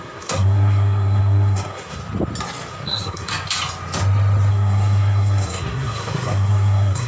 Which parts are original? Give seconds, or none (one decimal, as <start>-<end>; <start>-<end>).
2.0-2.7; 3.3-4.5